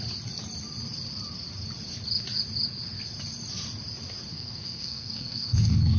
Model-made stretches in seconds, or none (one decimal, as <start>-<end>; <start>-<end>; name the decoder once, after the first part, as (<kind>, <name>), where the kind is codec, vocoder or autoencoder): 4.3-6.0 (codec, SNAC)